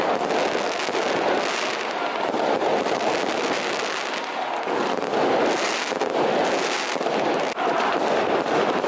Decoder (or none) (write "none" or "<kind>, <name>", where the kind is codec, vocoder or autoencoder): none